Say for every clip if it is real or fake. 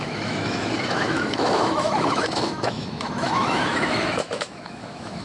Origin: fake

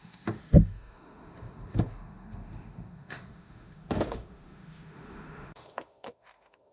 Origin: fake